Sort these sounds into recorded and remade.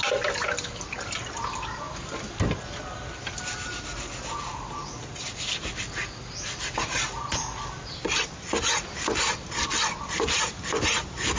recorded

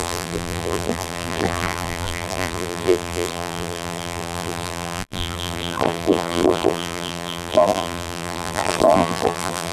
remade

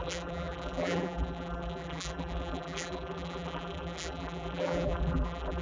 remade